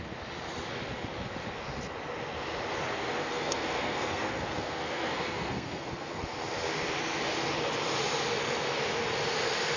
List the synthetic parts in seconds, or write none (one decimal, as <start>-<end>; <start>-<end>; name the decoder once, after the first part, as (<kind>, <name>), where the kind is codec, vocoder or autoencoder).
3.2-6.2 (codec, SNAC)